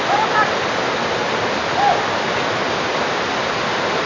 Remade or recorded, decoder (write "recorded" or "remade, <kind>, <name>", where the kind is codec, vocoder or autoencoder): recorded